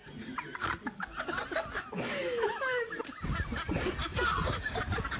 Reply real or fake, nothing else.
real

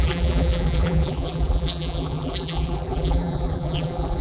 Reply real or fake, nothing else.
fake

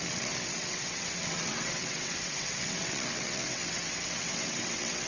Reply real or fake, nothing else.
fake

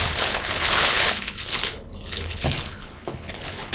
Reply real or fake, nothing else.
fake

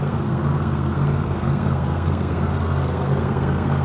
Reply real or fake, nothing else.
fake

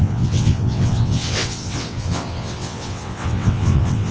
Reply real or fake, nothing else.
fake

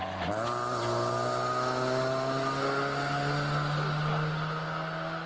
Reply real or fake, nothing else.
real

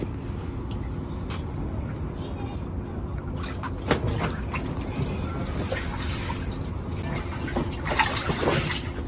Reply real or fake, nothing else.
real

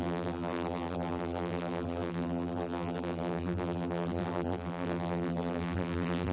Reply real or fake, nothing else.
fake